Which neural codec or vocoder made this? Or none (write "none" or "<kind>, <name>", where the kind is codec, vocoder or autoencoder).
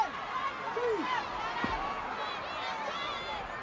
none